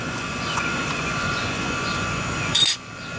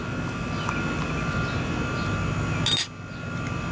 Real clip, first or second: second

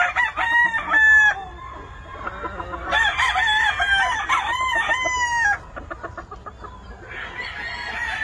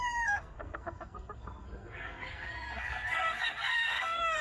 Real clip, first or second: first